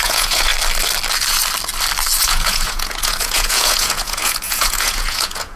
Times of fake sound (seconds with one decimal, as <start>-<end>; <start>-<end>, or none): 0.0-0.5; 2.2-5.6